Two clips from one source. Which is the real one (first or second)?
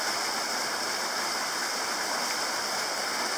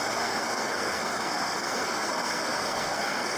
first